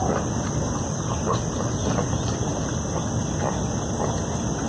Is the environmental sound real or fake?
real